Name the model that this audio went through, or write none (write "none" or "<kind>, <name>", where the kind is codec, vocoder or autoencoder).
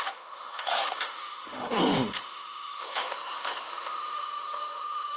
autoencoder, DAC-VAE